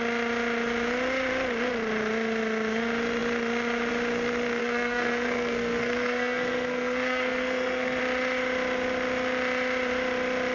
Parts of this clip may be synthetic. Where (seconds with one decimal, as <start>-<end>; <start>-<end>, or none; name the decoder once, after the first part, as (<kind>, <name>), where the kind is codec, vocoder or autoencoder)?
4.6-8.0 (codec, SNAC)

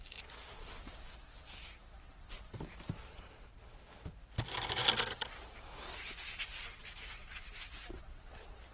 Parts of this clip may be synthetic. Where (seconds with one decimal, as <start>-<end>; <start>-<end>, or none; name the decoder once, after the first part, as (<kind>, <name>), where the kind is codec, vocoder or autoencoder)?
none

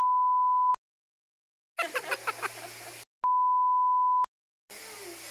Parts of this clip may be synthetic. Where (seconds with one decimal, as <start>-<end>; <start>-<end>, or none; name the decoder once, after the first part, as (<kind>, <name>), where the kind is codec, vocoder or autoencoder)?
none

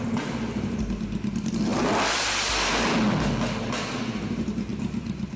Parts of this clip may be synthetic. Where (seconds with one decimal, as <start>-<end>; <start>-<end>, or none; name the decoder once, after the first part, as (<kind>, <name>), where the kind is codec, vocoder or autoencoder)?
1.7-2.5 (vocoder, BigVGAN v2); 4.7-5.4

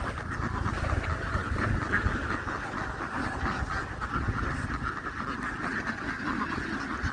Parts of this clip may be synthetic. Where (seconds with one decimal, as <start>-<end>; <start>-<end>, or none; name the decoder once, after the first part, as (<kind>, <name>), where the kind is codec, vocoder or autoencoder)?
none